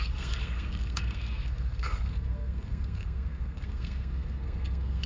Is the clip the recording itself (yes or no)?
no